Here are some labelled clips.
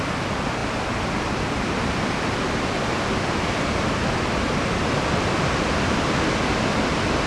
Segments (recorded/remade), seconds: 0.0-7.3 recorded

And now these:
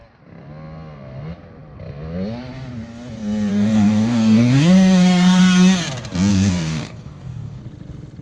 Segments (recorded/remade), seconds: 0.0-3.5 recorded; 3.5-5.4 remade; 5.4-6.3 recorded; 6.3-7.6 remade; 7.6-8.2 recorded

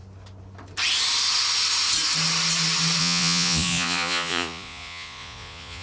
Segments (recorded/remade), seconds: 0.0-3.0 recorded; 3.0-5.8 remade

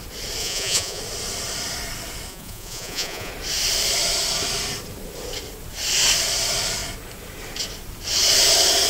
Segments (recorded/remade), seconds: 0.0-0.4 recorded; 0.4-1.0 remade; 1.0-2.3 recorded; 2.3-3.3 remade; 3.3-8.9 recorded

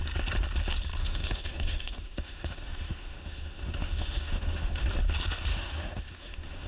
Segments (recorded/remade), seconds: 0.0-1.0 recorded; 1.0-4.9 remade; 4.9-5.5 recorded; 5.5-6.7 remade

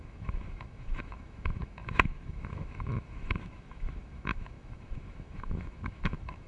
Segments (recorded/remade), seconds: 0.0-6.5 remade

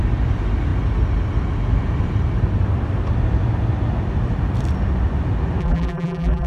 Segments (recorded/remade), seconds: 0.0-5.6 recorded; 5.6-6.5 remade

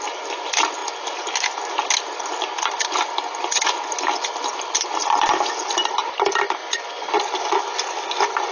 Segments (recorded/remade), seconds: 0.0-6.6 recorded; 6.6-7.1 remade; 7.1-8.5 recorded